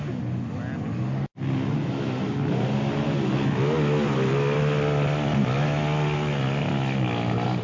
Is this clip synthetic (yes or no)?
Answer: no